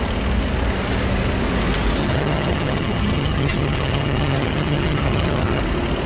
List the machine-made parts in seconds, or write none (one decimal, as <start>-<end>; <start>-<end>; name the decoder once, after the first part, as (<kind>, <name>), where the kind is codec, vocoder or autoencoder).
2.0-5.6 (vocoder, HiFi-GAN)